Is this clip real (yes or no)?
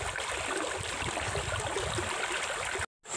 yes